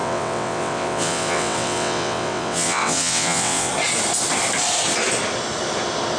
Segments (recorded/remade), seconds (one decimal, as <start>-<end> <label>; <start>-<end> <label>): 0.0-3.7 remade; 3.7-6.2 recorded